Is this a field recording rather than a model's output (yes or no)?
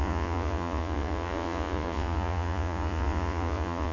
no